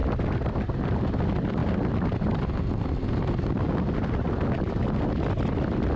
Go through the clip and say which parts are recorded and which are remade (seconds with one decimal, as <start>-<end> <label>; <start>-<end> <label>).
0.0-6.0 recorded